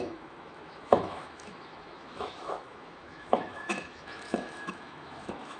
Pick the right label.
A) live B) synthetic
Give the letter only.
B